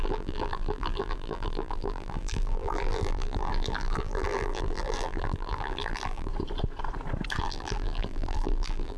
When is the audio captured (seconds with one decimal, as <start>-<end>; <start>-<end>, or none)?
6.3-7.4